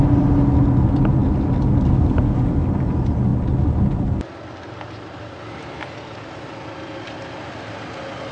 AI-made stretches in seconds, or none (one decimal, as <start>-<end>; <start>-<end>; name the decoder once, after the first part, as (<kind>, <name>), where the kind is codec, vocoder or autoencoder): none